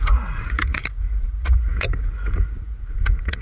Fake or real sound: fake